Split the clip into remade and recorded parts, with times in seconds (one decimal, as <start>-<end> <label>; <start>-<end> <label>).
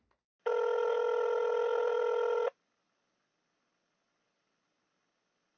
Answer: 0.0-5.6 recorded